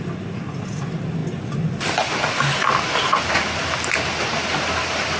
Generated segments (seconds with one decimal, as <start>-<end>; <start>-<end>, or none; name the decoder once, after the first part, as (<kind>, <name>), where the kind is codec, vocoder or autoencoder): none